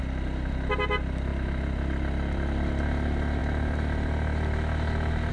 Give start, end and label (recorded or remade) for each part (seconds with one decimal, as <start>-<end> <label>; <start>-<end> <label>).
0.0-5.3 recorded